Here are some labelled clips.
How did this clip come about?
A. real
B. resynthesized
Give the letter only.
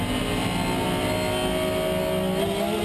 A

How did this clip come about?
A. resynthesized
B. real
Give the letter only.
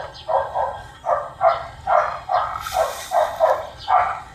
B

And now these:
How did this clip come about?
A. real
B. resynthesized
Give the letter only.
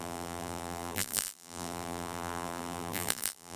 B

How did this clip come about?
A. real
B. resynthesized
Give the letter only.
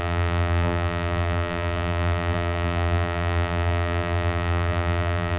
B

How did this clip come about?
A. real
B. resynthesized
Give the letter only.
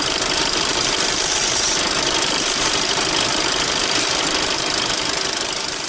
B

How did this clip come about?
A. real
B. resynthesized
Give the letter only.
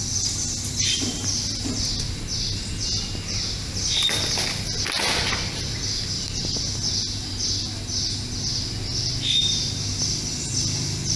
A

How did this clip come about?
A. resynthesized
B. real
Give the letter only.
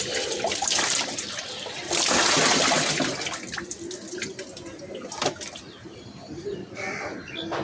B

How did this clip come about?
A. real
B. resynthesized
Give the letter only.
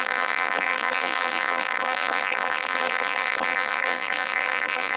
B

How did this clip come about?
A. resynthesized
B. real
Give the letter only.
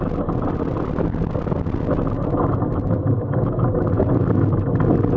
B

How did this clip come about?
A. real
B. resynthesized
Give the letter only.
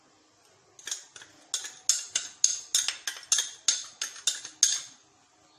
A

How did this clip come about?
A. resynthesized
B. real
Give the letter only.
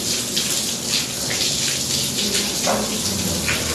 B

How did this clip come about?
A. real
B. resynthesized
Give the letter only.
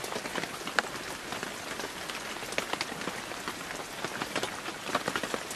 A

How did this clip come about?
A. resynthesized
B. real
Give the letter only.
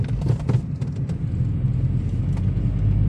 B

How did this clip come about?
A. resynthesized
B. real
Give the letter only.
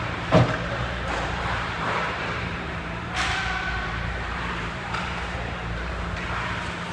A